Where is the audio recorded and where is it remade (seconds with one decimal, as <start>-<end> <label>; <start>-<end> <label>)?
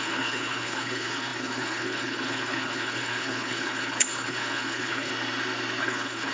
0.0-5.1 remade; 5.1-5.8 recorded; 5.8-6.3 remade